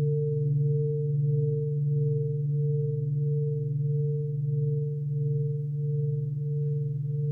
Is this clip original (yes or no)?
no